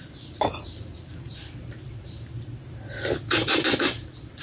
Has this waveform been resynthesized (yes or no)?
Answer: yes